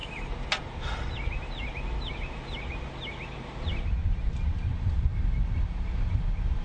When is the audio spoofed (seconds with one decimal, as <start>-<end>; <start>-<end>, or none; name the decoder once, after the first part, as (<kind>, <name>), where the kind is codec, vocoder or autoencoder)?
none